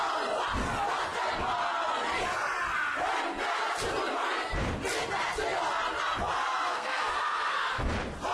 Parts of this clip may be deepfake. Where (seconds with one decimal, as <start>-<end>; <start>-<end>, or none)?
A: 6.7-7.7